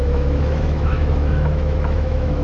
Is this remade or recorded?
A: remade